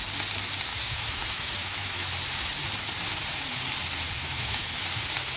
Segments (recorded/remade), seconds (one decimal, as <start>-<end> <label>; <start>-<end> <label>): 0.0-0.7 recorded; 0.7-2.1 remade; 2.1-4.2 recorded; 4.2-4.7 remade; 4.7-5.4 recorded